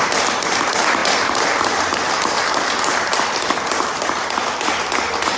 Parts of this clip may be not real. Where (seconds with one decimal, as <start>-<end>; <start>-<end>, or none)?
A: none